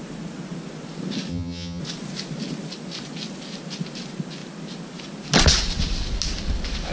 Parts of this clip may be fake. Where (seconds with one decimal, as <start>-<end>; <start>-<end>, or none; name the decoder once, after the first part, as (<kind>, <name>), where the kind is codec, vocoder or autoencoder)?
1.3-1.8 (vocoder, HiFi-GAN)